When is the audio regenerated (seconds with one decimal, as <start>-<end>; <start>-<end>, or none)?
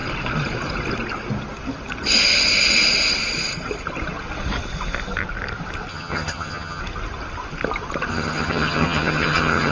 5.9-6.8; 8.1-9.7